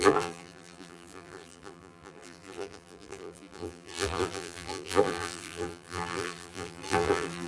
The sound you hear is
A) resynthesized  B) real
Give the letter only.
A